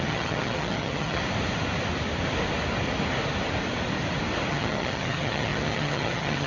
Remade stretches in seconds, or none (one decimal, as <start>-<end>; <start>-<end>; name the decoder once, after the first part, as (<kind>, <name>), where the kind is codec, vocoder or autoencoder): 0.0-1.2 (vocoder, HiFi-GAN); 4.5-6.5